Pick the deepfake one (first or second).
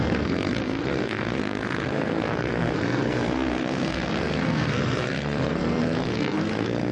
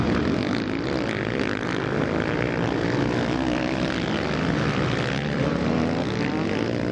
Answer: first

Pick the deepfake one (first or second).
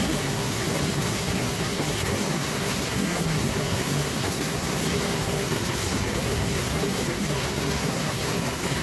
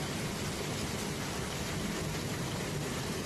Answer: first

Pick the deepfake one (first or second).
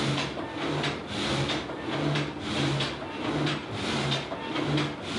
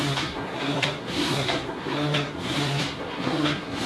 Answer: second